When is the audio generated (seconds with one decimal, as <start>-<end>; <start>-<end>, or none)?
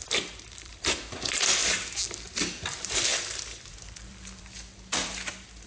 0.0-1.6; 2.4-5.7